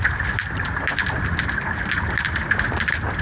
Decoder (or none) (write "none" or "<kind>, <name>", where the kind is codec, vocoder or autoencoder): none